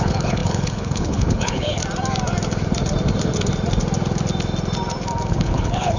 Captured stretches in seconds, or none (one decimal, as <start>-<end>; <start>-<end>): 1.8-5.3